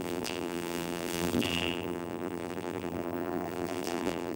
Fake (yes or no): yes